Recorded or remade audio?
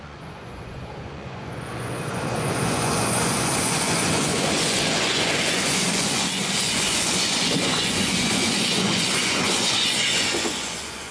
remade